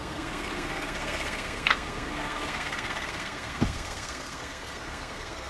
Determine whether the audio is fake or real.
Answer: fake